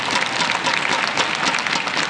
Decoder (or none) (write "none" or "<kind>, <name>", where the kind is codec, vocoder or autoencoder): none